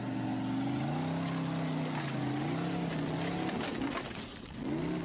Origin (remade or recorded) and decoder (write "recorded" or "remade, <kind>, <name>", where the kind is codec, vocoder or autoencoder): recorded